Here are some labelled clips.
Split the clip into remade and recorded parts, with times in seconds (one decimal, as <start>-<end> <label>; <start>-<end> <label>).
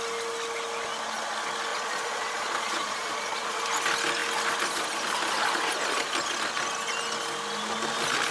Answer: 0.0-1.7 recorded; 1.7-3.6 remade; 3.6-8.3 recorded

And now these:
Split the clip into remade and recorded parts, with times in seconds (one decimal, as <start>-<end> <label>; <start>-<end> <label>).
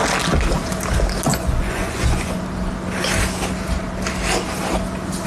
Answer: 0.0-1.3 recorded; 1.3-2.4 remade; 2.4-5.3 recorded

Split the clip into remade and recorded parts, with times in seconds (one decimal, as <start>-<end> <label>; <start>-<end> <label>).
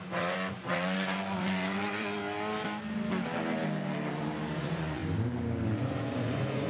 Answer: 0.0-2.2 remade; 2.2-4.6 recorded; 4.6-5.0 remade; 5.0-5.7 recorded; 5.7-6.7 remade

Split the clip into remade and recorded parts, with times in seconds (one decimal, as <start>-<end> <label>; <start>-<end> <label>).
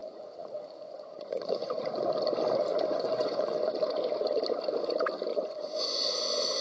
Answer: 0.0-1.7 remade; 1.7-2.7 recorded; 2.7-3.7 remade; 3.7-5.3 recorded; 5.3-6.0 remade; 6.0-6.6 recorded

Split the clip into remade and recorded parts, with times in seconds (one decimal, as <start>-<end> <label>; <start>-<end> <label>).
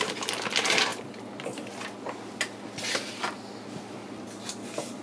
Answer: 0.0-5.0 recorded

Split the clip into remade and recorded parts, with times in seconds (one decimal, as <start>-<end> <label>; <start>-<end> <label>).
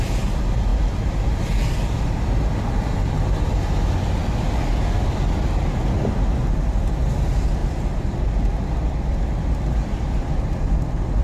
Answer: 0.0-11.2 recorded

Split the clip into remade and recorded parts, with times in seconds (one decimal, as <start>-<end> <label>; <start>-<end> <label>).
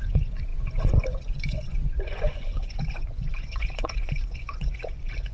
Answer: 0.0-5.3 remade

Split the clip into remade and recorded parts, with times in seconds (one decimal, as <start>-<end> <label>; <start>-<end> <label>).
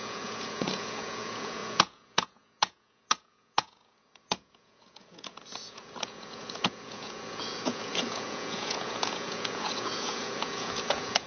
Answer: 0.0-11.3 remade